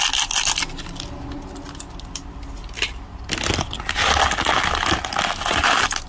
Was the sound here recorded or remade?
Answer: recorded